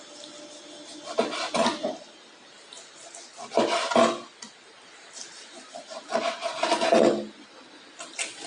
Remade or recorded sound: recorded